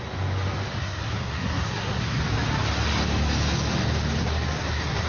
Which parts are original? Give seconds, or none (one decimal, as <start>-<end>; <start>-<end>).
0.0-0.8; 2.2-4.2